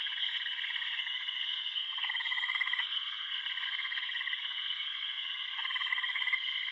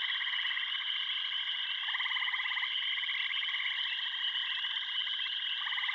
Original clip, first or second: second